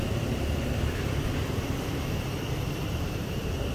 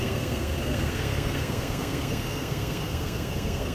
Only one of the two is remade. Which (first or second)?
second